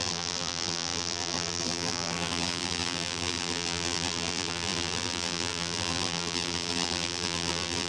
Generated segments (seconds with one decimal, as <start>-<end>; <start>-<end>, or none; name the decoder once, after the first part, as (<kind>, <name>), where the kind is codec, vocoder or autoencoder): 0.0-7.9 (vocoder, BigVGAN v2)